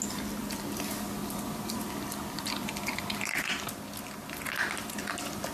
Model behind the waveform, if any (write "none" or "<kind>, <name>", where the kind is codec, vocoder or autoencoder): none